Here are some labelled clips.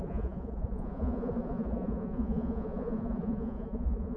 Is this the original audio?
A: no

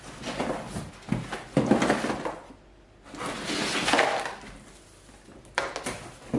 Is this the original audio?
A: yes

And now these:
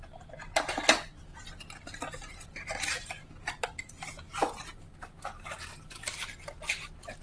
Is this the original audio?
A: yes